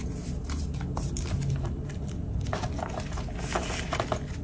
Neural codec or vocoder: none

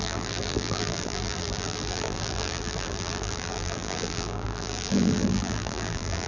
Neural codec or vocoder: vocoder, BigVGAN v2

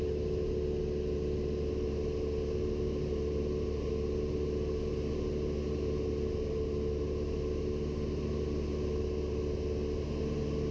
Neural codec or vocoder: none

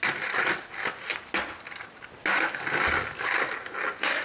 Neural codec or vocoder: none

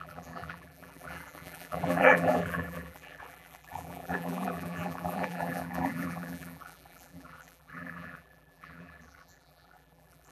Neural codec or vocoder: vocoder, BigVGAN v2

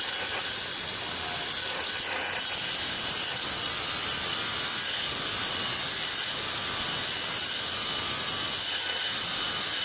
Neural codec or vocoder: none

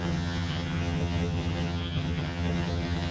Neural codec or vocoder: vocoder, HiFi-GAN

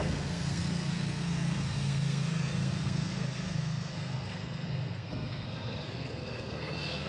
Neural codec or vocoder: codec, SNAC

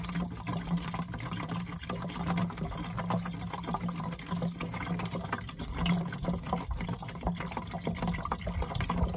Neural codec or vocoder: none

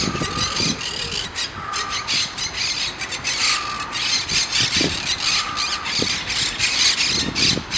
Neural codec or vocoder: none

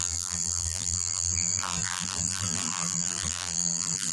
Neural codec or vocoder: vocoder, BigVGAN v2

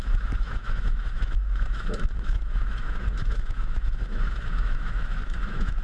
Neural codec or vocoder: autoencoder, DAC-VAE